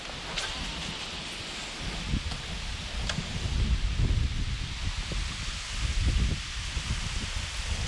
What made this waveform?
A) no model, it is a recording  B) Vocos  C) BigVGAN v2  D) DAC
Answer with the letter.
A